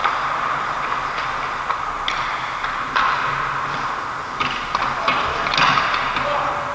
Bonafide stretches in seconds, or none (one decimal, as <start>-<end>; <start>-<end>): 0.0-6.7